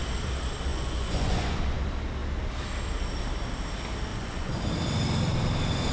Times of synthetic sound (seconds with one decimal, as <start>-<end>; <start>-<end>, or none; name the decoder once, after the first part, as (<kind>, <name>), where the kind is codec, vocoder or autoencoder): 0.7-1.6 (vocoder, Vocos); 4.1-4.7